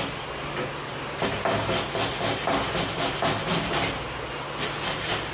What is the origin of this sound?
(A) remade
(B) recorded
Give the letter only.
B